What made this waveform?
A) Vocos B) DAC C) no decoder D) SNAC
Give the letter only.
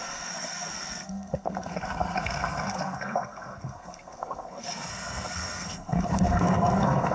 D